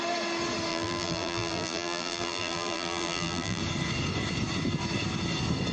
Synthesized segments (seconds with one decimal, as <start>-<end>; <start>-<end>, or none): 0.7-3.6